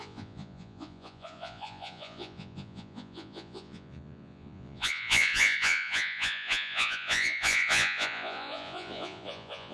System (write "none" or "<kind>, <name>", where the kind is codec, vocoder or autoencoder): vocoder, Vocos